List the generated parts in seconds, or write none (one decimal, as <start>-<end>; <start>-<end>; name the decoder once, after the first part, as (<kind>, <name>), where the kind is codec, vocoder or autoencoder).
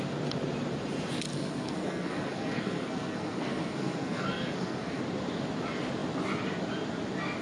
1.3-5.0 (codec, SNAC)